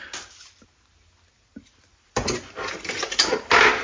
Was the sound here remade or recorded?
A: recorded